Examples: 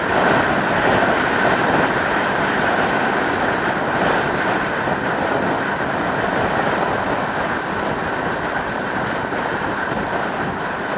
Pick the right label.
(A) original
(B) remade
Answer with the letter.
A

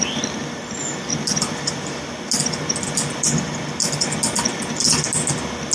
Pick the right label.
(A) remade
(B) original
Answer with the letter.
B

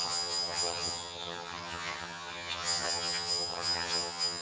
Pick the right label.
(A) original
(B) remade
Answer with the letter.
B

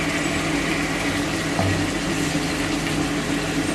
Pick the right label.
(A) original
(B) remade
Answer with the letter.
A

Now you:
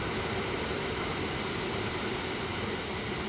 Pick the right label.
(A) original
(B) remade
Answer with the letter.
A